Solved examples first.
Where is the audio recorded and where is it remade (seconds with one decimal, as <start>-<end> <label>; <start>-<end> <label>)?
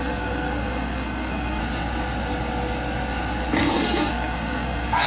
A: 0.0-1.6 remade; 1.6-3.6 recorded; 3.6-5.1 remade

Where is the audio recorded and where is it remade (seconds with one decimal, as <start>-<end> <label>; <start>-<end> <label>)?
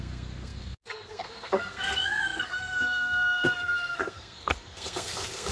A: 0.0-5.5 remade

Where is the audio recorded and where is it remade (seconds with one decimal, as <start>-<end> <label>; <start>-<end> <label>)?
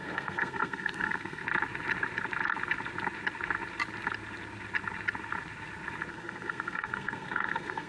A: 0.0-1.4 remade; 1.4-6.1 recorded; 6.1-7.9 remade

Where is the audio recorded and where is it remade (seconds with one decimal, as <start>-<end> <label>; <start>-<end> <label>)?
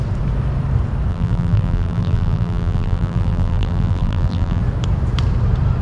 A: 0.0-1.1 recorded; 1.1-4.6 remade; 4.6-5.8 recorded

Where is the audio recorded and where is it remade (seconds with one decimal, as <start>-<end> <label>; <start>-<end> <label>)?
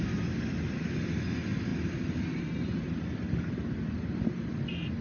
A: 0.0-5.0 recorded